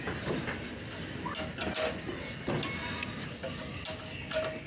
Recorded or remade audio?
recorded